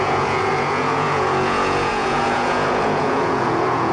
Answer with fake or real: fake